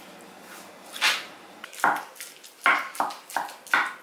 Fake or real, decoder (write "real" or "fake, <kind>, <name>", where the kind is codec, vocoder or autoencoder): real